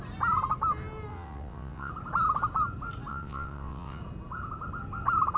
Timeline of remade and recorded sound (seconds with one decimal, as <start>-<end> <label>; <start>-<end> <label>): 0.0-1.1 recorded; 1.1-1.9 remade; 1.9-3.1 recorded; 3.1-4.0 remade; 4.0-5.4 recorded